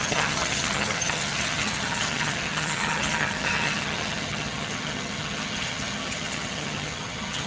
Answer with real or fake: fake